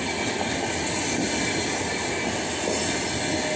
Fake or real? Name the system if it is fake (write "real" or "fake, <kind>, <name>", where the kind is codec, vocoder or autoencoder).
real